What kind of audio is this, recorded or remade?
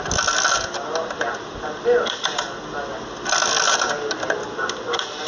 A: recorded